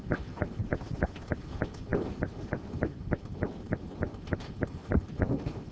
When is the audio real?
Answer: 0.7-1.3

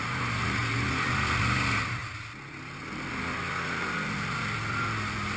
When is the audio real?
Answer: 0.6-1.4; 2.0-5.4

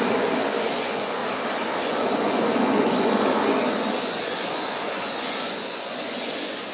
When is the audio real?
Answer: 1.2-1.8

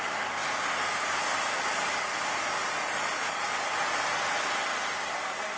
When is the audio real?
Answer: 0.0-5.6

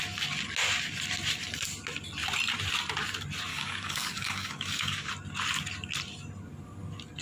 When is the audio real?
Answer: 0.0-3.5; 5.1-7.2

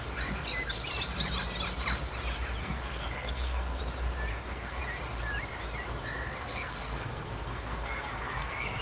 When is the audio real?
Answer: 0.0-2.6; 3.8-4.3; 4.8-6.4

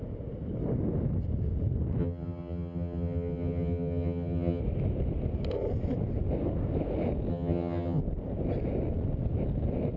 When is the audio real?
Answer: 0.0-2.0; 4.6-7.3; 8.0-10.0

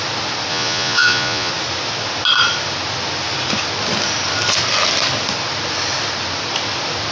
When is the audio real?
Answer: 0.0-0.5; 1.5-7.1